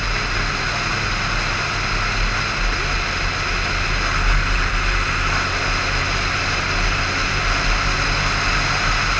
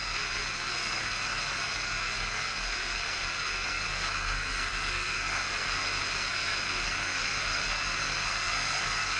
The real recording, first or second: first